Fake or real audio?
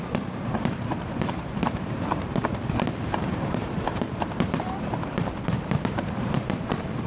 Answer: fake